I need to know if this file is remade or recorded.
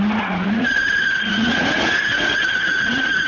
remade